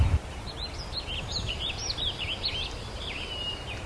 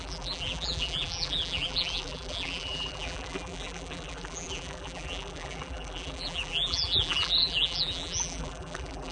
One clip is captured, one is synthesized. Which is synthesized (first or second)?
second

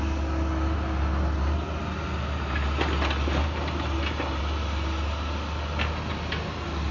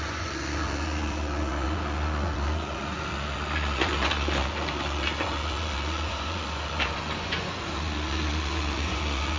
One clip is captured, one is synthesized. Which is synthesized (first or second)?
second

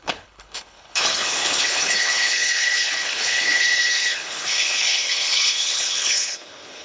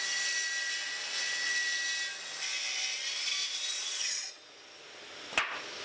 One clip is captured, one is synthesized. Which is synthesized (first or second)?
first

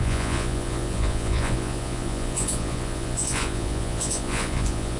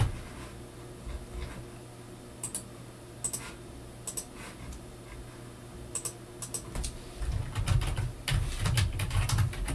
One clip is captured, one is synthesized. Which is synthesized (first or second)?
first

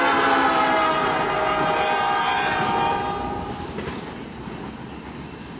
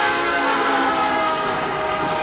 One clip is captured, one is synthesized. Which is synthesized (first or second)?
second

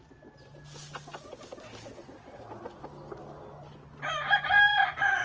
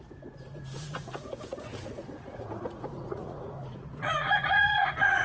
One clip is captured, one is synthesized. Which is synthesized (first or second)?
second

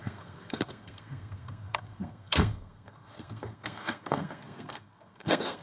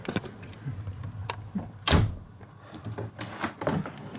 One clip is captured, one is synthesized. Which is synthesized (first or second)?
first